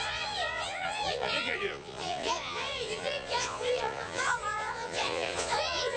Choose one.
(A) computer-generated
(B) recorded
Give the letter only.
A